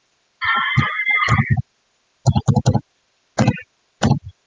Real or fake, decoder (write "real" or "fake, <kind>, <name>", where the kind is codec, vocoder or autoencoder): real